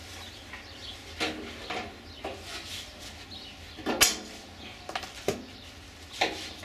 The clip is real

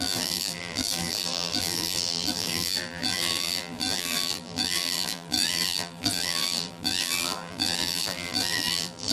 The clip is fake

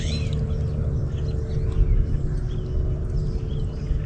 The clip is real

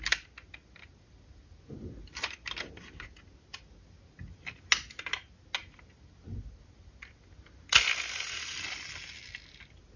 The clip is real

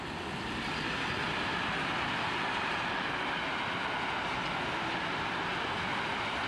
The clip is real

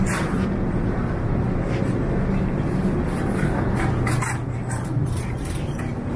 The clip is real